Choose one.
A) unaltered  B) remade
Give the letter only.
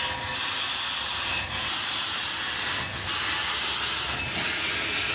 A